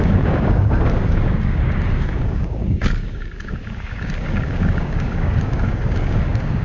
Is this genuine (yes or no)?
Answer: no